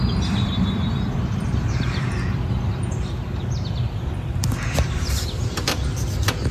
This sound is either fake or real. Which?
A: fake